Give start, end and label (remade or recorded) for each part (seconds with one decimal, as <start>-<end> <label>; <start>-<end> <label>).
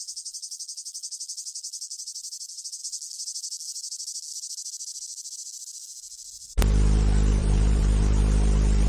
0.0-7.4 recorded; 7.4-8.2 remade; 8.2-8.9 recorded